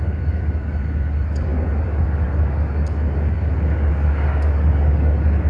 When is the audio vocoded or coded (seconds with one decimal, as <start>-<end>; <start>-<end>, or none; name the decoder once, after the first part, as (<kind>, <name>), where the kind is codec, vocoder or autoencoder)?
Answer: 0.0-5.5 (codec, DAC)

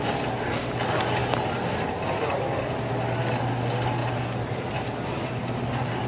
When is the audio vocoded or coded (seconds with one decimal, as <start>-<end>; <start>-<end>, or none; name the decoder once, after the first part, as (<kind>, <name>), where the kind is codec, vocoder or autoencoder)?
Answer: none

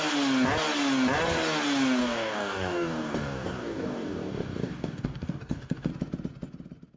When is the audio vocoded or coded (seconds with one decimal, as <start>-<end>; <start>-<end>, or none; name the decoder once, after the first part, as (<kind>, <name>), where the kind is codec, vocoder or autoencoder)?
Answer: 2.0-5.9 (codec, DAC)

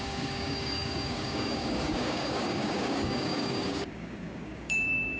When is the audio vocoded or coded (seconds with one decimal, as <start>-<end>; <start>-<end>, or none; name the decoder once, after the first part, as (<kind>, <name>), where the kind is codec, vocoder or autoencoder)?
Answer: 0.0-5.2 (codec, DAC)

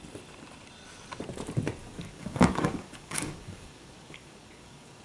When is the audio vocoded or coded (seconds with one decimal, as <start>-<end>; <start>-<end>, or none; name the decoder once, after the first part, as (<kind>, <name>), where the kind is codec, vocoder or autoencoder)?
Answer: 1.8-5.0 (codec, DAC)

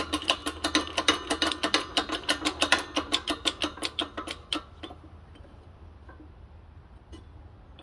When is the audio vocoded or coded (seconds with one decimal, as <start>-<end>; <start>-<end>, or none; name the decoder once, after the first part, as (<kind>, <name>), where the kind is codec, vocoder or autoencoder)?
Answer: none